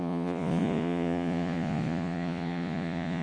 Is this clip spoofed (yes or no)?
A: yes